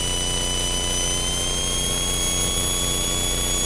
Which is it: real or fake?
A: real